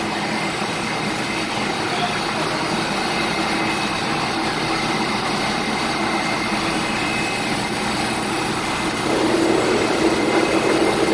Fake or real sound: real